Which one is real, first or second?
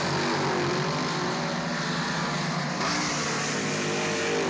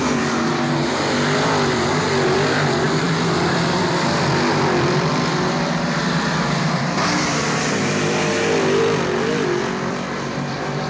first